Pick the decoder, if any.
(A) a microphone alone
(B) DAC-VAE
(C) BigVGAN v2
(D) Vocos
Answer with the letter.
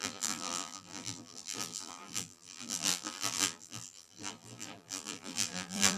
C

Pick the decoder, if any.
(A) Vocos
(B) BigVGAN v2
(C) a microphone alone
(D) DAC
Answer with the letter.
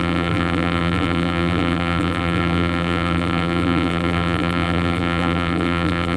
B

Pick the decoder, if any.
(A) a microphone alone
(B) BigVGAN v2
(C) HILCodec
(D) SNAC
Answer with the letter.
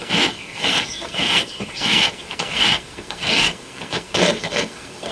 D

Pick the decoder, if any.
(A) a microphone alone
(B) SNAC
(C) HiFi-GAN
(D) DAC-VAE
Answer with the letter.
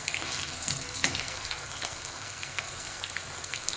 B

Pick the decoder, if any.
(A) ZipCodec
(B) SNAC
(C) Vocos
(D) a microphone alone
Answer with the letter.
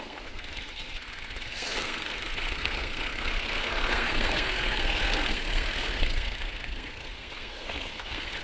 B